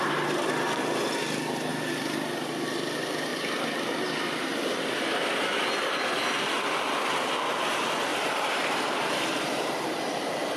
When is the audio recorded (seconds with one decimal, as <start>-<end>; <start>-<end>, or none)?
0.0-8.1; 10.0-10.6